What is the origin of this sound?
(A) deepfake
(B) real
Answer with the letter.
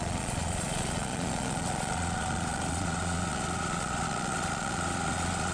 A